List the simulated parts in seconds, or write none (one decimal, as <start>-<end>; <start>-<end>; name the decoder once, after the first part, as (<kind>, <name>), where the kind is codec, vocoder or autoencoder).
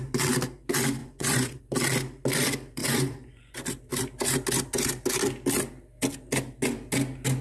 1.0-1.6 (vocoder, Vocos); 2.8-3.5